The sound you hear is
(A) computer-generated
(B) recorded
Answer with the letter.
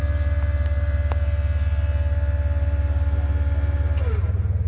B